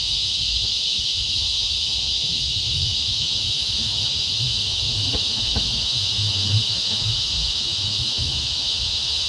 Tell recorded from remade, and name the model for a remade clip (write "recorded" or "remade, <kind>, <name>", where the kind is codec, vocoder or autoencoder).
remade, autoencoder, DAC-VAE